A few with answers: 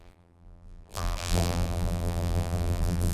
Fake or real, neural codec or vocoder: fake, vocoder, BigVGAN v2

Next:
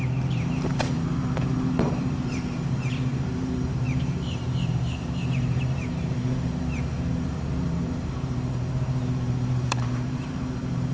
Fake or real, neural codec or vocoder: fake, vocoder, BigVGAN v2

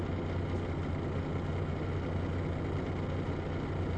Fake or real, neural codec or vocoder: real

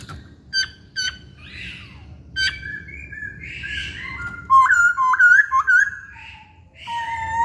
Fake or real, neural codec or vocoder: fake, vocoder, BigVGAN v2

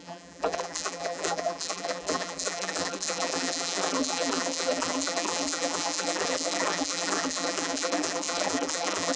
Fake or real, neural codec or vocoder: fake, vocoder, BigVGAN v2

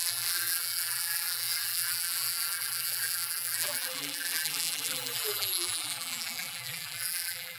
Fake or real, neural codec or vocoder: fake, vocoder, BigVGAN v2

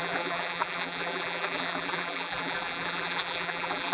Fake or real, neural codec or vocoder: fake, vocoder, BigVGAN v2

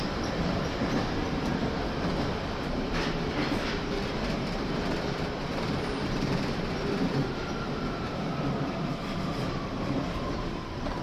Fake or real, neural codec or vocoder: fake, vocoder, BigVGAN v2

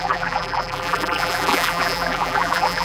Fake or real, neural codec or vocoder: fake, vocoder, BigVGAN v2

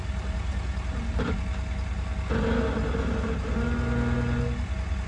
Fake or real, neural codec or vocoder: real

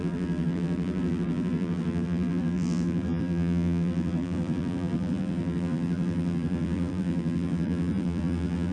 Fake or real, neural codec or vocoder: fake, vocoder, BigVGAN v2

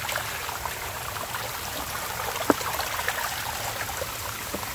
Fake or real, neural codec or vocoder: fake, vocoder, BigVGAN v2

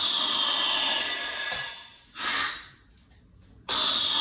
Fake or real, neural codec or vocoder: real